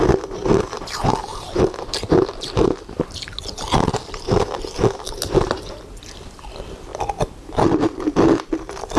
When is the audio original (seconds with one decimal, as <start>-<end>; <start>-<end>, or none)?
0.0-9.0